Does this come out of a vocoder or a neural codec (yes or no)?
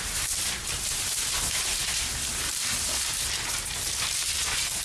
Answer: no